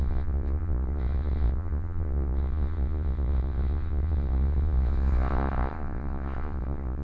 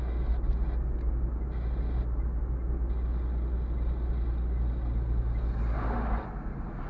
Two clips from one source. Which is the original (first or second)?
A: second